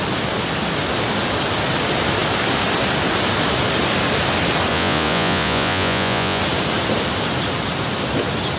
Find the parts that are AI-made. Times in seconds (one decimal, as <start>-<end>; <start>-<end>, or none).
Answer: 4.7-6.4